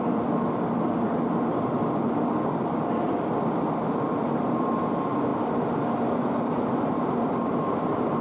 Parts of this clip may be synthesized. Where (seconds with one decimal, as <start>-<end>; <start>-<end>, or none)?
0.0-5.3; 7.5-8.2